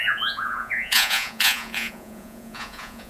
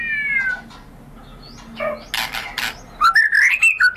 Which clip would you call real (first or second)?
second